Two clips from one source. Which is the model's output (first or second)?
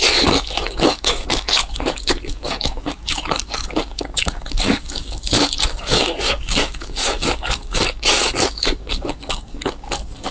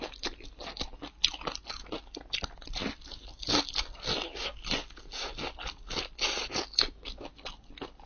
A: first